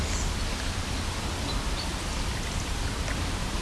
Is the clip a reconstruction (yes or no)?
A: no